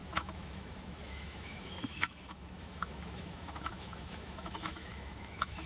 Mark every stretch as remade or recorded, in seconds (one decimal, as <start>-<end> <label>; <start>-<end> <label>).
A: 0.0-5.7 remade